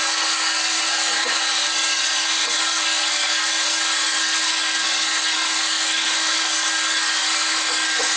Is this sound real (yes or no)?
no